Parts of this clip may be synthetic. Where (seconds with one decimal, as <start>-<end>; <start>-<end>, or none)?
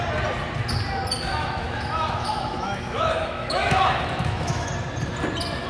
1.3-4.7